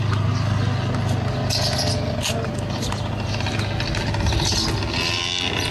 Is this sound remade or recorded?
recorded